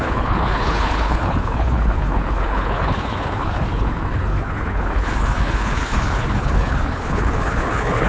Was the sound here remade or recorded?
remade